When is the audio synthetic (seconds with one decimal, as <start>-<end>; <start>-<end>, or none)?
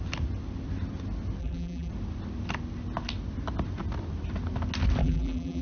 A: 1.4-1.9; 5.0-5.6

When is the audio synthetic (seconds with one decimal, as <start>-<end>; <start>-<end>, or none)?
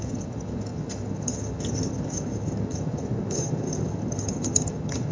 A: 0.0-5.1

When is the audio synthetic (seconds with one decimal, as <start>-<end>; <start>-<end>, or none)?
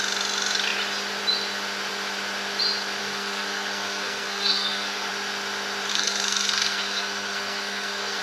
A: 3.0-5.1; 5.9-8.2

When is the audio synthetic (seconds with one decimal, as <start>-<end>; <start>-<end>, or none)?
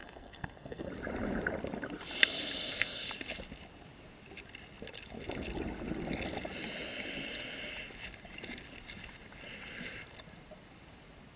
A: 0.0-0.9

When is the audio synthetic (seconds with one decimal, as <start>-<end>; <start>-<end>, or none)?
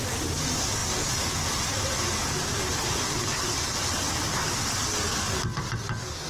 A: none